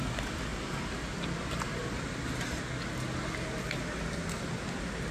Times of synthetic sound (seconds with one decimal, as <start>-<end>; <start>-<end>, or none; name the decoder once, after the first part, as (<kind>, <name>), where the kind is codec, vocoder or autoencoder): none